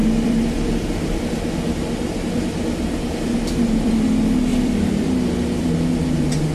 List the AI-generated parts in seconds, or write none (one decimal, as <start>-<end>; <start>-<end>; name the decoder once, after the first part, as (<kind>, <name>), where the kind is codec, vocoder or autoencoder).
0.0-3.9 (vocoder, BigVGAN v2); 4.5-5.0